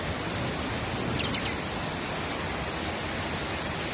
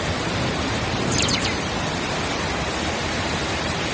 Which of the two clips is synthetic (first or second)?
second